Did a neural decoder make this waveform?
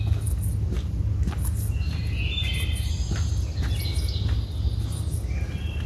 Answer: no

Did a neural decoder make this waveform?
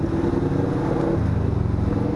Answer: no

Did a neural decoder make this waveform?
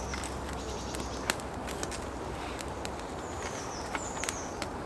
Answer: no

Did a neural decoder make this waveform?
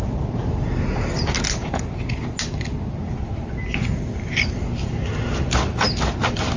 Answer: no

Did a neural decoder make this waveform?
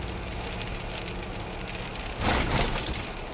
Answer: no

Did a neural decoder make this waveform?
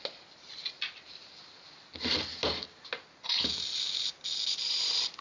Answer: no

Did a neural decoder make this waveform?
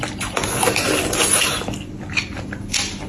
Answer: no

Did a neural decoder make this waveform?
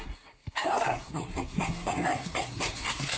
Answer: yes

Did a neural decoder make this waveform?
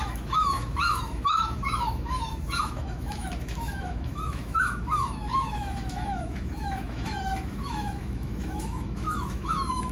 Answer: yes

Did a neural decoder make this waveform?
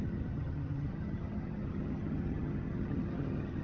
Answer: yes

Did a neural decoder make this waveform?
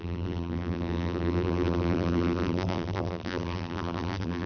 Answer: yes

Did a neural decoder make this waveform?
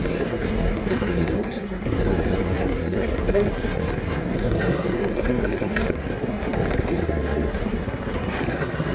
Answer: yes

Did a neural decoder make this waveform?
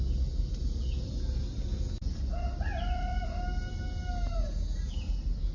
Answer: no